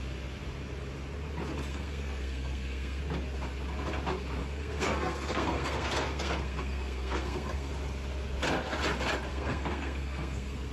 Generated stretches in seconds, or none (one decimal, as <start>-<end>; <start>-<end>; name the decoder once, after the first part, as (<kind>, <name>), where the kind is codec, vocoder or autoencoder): 1.7-3.0 (codec, SNAC); 4.4-7.7; 9.3-10.7

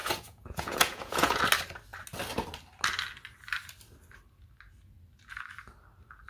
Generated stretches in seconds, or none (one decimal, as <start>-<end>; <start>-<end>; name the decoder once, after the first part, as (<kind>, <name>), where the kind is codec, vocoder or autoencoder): 0.0-1.4 (vocoder, Vocos)